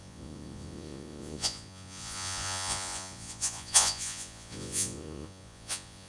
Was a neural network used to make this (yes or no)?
yes